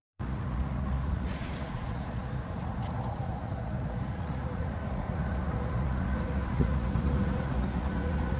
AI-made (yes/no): yes